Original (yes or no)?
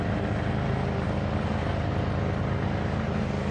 yes